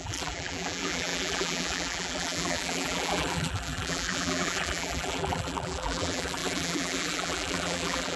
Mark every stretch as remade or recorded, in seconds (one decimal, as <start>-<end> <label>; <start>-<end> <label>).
0.0-8.2 remade